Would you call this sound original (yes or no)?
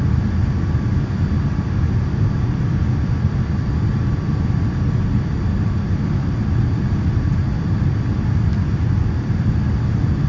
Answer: yes